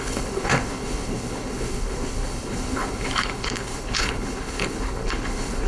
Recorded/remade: remade